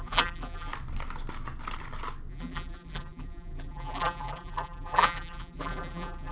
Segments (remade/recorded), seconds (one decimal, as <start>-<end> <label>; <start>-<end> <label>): 0.0-0.7 remade; 0.7-2.3 recorded; 2.3-6.3 remade